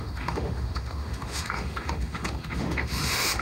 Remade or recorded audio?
remade